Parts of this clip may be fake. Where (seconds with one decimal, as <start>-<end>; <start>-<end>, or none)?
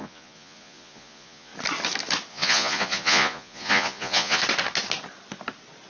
0.0-1.5; 2.3-4.4